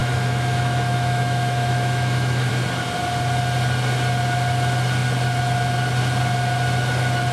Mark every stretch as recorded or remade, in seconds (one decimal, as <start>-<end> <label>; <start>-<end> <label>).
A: 0.0-2.5 remade; 2.5-7.3 recorded

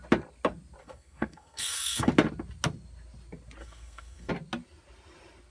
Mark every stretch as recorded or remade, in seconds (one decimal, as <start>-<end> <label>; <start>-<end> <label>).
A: 0.0-0.8 recorded; 0.8-2.1 remade; 2.1-3.6 recorded; 3.6-4.3 remade; 4.3-5.5 recorded

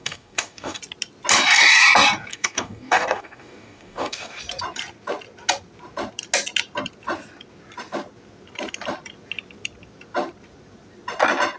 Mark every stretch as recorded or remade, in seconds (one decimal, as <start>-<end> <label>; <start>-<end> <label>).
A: 0.0-0.8 remade; 0.8-2.3 recorded; 2.3-4.4 remade; 4.4-11.6 recorded

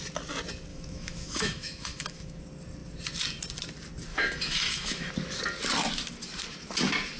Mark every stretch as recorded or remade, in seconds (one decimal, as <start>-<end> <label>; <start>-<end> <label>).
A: 0.0-0.7 recorded; 0.7-2.4 remade; 2.4-4.1 recorded; 4.1-5.1 remade; 5.1-7.2 recorded